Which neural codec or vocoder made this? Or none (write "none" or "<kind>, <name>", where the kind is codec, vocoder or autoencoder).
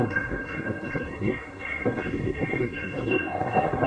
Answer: codec, SNAC